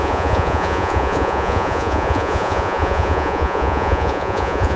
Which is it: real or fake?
fake